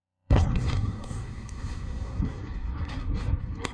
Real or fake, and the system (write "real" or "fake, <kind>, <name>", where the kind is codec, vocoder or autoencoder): fake, codec, SNAC